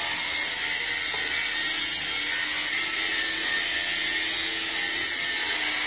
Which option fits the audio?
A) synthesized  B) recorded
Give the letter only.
B